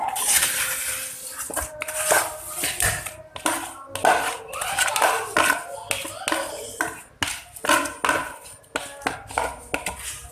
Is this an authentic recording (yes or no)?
yes